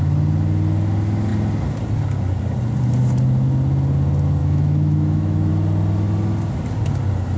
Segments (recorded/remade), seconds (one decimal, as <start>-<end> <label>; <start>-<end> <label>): 0.0-4.4 recorded; 4.4-5.5 remade; 5.5-7.4 recorded